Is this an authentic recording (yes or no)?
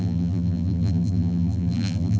no